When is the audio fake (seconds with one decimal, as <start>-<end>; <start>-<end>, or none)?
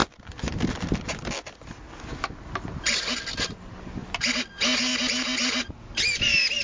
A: none